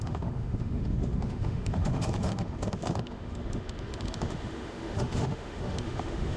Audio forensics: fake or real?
fake